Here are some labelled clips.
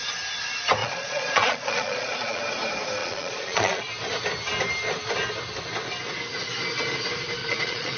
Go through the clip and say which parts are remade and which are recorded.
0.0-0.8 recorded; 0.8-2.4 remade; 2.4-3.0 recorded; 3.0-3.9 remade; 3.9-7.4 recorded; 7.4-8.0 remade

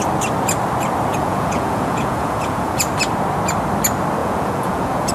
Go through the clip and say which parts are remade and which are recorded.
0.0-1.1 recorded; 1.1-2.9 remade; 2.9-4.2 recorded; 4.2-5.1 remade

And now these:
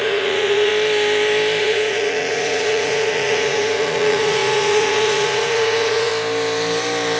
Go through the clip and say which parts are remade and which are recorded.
0.0-0.7 remade; 0.7-1.6 recorded; 1.6-6.1 remade; 6.1-7.2 recorded

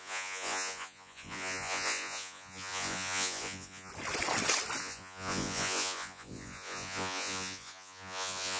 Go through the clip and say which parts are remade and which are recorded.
0.0-3.9 remade; 3.9-4.8 recorded; 4.8-8.6 remade

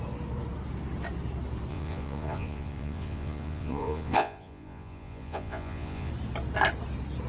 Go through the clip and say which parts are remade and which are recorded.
0.0-1.7 recorded; 1.7-6.1 remade; 6.1-7.3 recorded

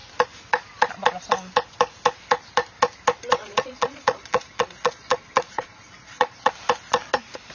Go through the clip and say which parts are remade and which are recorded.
0.0-3.4 recorded; 3.4-6.5 remade; 6.5-7.5 recorded

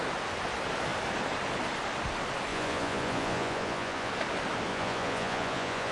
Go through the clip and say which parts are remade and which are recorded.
0.0-2.5 recorded; 2.5-4.1 remade; 4.1-4.7 recorded; 4.7-5.9 remade